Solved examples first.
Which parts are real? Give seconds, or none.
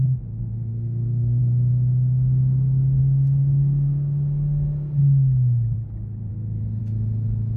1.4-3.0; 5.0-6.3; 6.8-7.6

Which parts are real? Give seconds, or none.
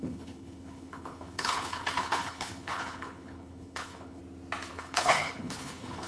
4.2-4.7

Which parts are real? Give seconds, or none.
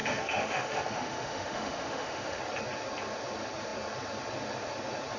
2.4-5.2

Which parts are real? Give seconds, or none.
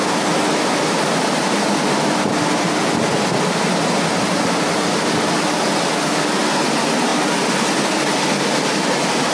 0.0-9.3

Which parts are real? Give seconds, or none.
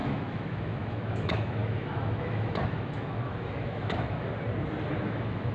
4.3-5.0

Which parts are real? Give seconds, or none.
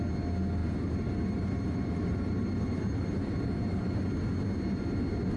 0.0-0.6; 3.8-5.4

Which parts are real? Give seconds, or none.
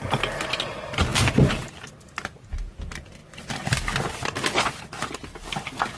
0.0-6.0